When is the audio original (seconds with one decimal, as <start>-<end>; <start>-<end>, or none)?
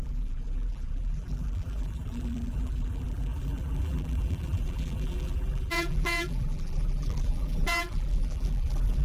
none